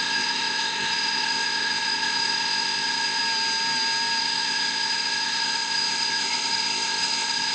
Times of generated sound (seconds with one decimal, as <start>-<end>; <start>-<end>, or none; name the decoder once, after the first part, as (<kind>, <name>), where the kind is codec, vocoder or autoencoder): 0.0-3.2 (codec, ZipCodec); 4.2-7.5